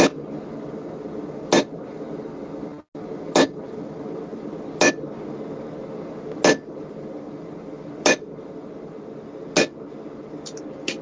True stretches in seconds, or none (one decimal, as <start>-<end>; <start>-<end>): 0.0-11.0